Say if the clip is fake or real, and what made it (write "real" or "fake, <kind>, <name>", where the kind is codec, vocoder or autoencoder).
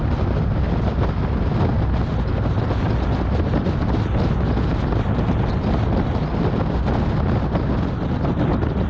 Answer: real